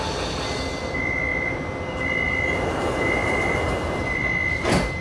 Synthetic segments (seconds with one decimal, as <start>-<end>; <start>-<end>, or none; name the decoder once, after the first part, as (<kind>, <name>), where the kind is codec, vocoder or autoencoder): 3.2-4.2 (vocoder, BigVGAN v2)